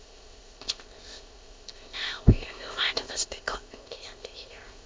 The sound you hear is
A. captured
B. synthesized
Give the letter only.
B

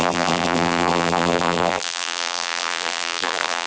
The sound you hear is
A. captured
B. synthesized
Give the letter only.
B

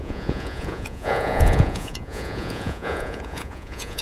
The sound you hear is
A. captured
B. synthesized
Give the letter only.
B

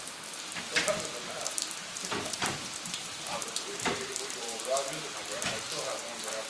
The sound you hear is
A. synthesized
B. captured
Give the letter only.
A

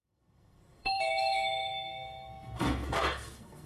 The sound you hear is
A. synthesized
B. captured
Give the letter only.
A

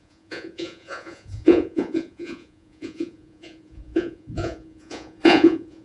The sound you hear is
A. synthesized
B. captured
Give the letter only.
A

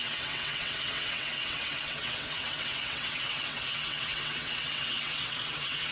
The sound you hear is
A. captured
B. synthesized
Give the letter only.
B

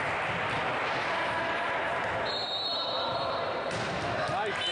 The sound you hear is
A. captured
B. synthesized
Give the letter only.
A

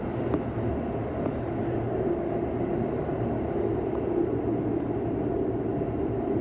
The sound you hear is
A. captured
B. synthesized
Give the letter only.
A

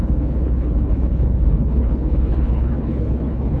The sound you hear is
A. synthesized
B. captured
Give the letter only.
A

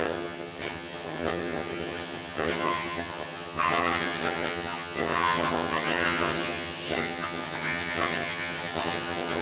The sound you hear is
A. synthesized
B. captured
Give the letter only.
A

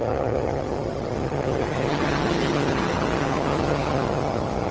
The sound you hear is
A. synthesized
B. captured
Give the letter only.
A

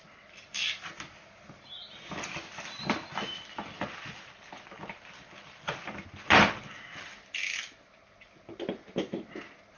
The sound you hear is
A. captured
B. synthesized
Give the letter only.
A